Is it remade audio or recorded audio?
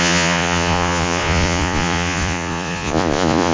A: remade